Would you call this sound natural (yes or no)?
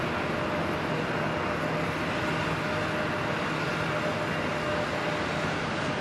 yes